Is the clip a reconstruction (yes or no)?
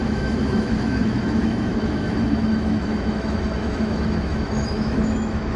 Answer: yes